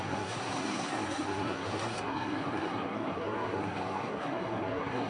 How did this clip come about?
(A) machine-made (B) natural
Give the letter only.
A